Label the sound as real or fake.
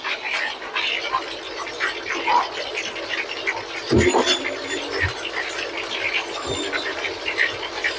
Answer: real